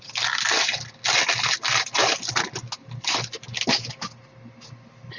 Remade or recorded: recorded